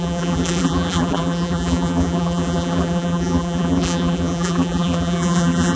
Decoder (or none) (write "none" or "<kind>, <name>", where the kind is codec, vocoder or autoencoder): vocoder, BigVGAN v2